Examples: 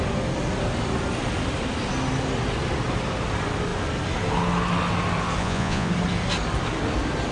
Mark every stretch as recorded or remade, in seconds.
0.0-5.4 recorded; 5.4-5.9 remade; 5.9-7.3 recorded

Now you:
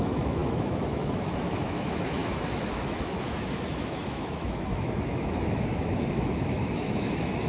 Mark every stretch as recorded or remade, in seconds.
0.0-7.5 remade

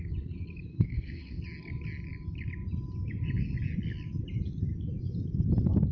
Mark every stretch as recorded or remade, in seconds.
0.0-0.7 recorded; 0.7-1.4 remade; 1.4-5.9 recorded

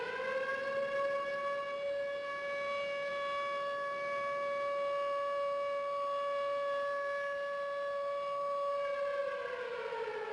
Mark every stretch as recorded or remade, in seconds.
0.0-10.3 recorded

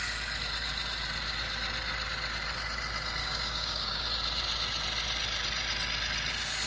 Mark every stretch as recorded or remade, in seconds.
0.0-3.2 recorded; 3.2-4.1 remade; 4.1-6.7 recorded

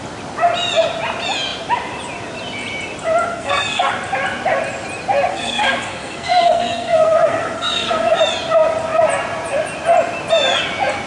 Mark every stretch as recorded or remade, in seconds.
0.0-3.3 recorded; 3.3-3.9 remade; 3.9-5.3 recorded; 5.3-8.2 remade; 8.2-11.1 recorded